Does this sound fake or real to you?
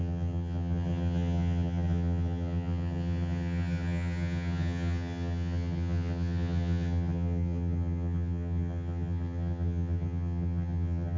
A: fake